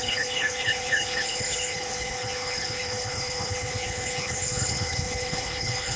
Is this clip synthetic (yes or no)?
yes